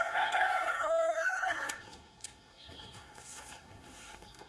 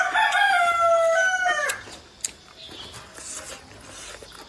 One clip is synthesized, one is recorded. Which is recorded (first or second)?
second